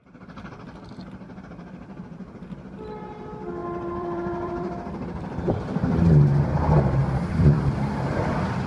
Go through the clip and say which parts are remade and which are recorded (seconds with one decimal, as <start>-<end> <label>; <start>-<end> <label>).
0.0-1.5 remade; 1.5-3.6 recorded; 3.6-6.5 remade; 6.5-7.0 recorded; 7.0-8.7 remade